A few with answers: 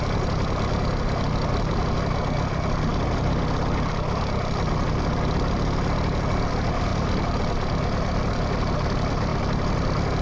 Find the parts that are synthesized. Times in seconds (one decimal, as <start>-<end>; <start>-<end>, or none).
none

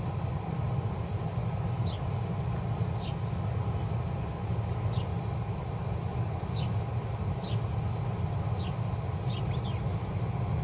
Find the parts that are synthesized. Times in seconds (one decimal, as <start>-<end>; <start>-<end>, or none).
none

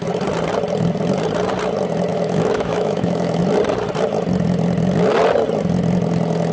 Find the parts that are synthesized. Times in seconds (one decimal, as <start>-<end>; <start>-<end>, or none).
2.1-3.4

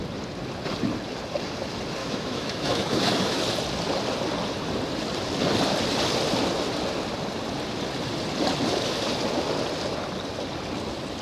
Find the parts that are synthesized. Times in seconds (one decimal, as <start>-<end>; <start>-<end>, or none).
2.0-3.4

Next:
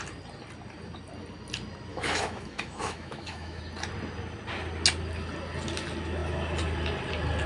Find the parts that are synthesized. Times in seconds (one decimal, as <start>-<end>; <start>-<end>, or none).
1.9-3.6